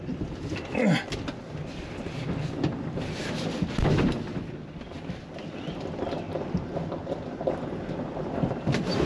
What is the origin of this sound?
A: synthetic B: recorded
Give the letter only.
B